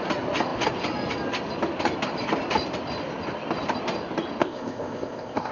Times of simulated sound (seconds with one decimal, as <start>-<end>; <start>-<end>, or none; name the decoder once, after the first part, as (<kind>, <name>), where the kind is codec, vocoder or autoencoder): 4.4-5.5 (codec, ZipCodec)